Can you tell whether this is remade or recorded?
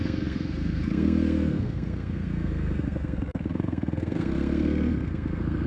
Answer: remade